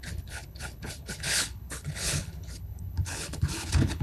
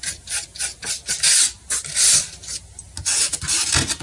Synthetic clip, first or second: first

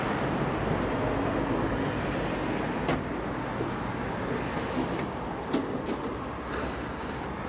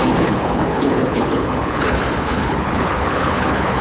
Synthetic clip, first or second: second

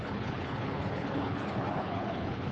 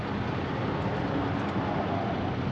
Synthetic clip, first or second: first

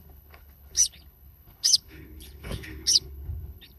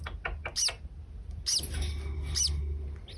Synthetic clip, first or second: first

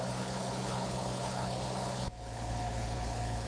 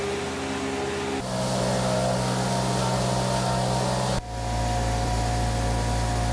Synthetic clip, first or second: first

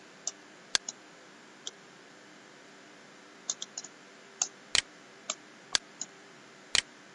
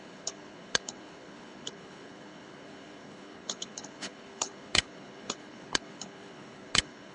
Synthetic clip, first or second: second